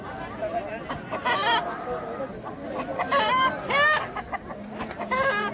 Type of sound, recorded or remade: recorded